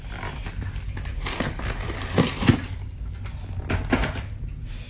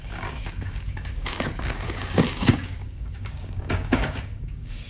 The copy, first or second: second